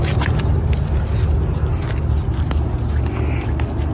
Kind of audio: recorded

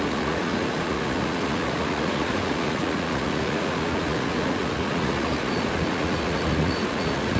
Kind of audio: remade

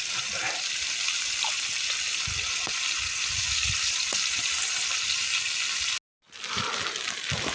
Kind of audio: recorded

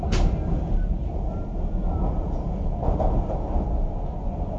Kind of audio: recorded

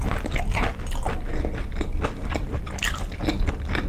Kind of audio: recorded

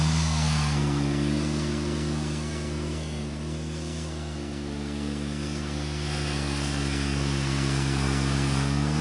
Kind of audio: remade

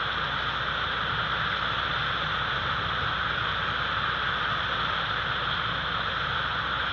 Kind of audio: recorded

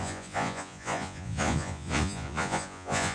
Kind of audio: remade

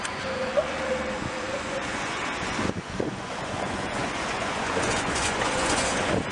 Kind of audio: remade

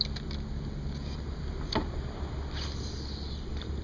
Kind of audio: recorded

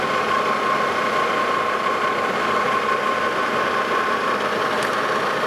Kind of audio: recorded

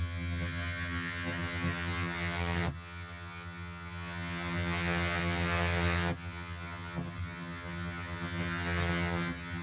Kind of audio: remade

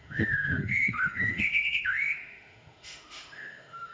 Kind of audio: remade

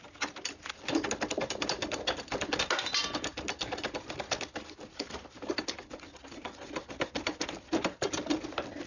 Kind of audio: recorded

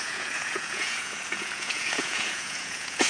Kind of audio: remade